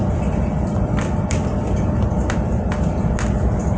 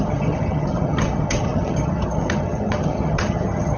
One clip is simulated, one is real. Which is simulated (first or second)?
second